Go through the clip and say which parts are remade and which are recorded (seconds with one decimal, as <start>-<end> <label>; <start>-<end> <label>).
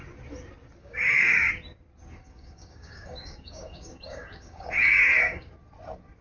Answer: 0.0-0.8 recorded; 0.8-1.5 remade; 1.5-2.2 recorded; 2.2-5.5 remade; 5.5-6.2 recorded